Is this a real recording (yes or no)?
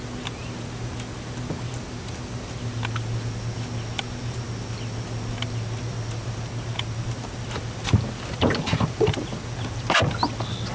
yes